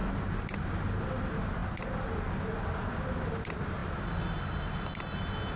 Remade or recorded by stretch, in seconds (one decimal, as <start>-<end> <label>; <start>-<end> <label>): 0.0-5.6 recorded